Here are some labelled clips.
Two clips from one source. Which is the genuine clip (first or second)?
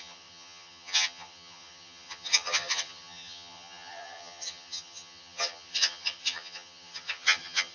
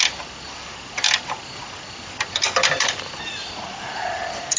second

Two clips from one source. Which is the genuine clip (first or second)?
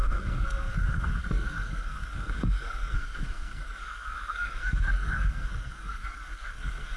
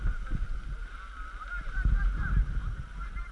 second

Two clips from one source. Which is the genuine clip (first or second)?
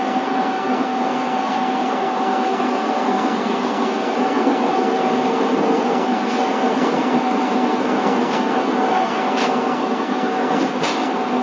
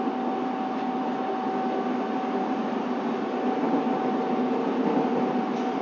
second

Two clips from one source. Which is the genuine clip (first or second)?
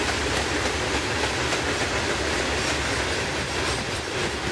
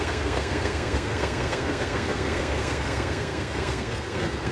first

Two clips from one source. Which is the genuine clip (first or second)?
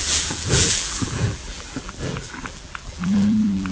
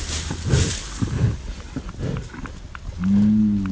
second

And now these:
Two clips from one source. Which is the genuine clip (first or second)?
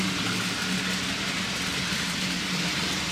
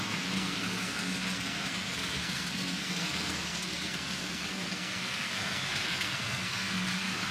first